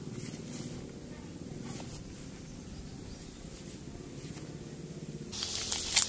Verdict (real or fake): real